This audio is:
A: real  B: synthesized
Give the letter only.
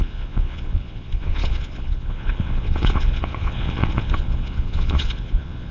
B